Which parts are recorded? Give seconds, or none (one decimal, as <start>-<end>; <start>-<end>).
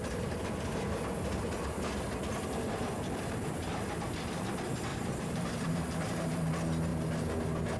0.0-4.9; 6.5-7.8